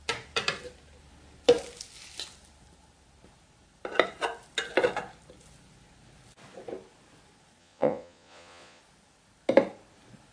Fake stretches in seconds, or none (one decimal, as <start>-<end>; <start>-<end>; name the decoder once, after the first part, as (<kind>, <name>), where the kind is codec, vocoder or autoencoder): 7.6-8.8 (vocoder, Vocos)